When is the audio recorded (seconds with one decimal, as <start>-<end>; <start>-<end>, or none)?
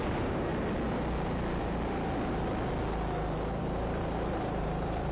0.5-3.6